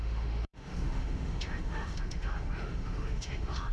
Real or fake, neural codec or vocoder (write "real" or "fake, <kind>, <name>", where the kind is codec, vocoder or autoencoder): fake, autoencoder, DAC-VAE